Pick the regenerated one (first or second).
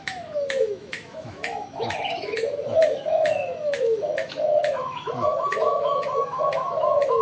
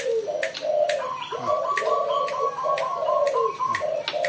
first